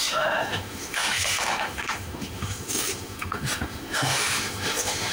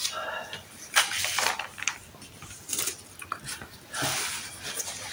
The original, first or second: second